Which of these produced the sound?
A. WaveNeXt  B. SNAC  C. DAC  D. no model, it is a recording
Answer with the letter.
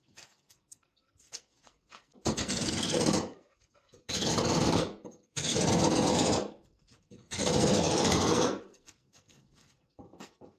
B